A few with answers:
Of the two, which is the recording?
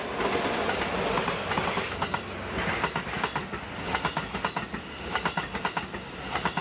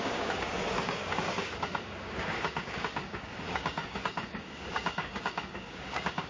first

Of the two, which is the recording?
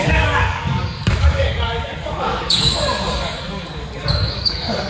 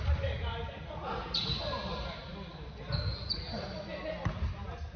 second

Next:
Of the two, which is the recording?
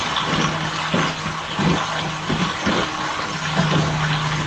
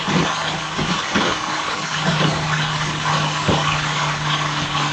first